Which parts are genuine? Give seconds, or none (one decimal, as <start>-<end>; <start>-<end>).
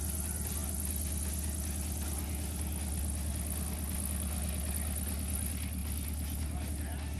0.0-7.2